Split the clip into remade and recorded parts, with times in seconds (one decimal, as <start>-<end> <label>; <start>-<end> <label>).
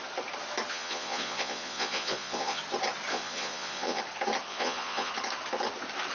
0.0-0.7 recorded; 0.7-2.6 remade; 2.6-3.1 recorded; 3.1-4.0 remade; 4.0-4.5 recorded; 4.5-5.1 remade; 5.1-6.1 recorded